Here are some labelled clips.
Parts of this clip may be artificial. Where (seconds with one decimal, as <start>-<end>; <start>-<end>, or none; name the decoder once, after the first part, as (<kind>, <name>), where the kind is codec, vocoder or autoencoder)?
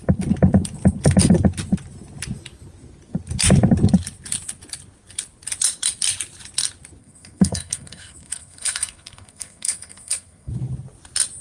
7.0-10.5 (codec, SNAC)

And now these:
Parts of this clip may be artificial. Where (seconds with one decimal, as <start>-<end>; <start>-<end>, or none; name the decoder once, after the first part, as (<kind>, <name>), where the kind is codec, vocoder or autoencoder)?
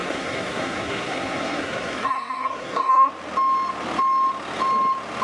0.0-3.1 (codec, SNAC)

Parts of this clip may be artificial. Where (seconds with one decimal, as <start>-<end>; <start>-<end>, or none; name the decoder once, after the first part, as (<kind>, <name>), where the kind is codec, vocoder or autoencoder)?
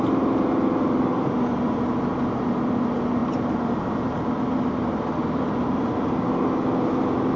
none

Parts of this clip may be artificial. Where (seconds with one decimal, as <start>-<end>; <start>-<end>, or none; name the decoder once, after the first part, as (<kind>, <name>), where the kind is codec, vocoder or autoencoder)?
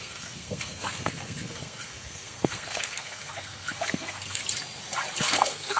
0.0-4.4 (codec, SNAC); 5.2-5.8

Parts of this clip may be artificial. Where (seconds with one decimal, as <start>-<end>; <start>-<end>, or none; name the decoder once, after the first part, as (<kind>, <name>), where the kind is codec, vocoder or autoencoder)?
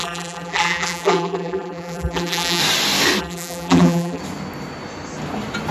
0.0-2.6 (vocoder, BigVGAN v2); 3.2-4.2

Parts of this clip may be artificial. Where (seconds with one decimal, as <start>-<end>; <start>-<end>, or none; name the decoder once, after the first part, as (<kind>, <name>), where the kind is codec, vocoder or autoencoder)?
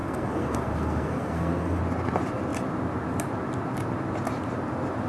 0.0-1.8 (codec, SNAC)